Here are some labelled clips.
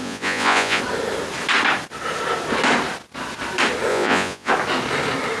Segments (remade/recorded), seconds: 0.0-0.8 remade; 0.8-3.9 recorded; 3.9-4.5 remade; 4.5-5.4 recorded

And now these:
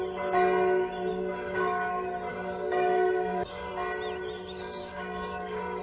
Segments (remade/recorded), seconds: 0.0-1.1 recorded; 1.1-1.9 remade; 1.9-2.3 recorded; 2.3-3.7 remade; 3.7-4.8 recorded; 4.8-5.8 remade

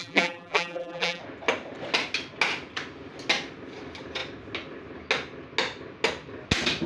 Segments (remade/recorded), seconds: 0.0-1.2 remade; 1.2-6.9 recorded

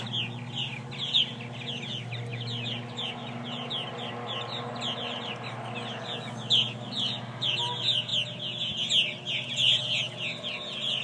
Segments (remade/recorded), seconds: 0.0-11.0 recorded

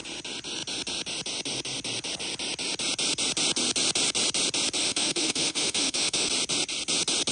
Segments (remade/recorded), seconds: 0.0-4.8 recorded; 4.8-6.3 remade; 6.3-7.3 recorded

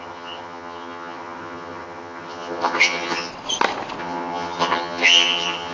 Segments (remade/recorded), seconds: 0.0-3.3 remade; 3.3-4.0 recorded; 4.0-5.7 remade

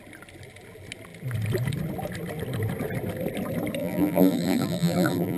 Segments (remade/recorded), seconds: 0.0-3.8 recorded; 3.8-5.4 remade

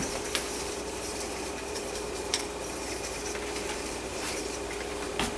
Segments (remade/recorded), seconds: 0.0-3.2 remade; 3.2-4.1 recorded; 4.1-4.9 remade; 4.9-5.4 recorded